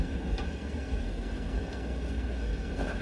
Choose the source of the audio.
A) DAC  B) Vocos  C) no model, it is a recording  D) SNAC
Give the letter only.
D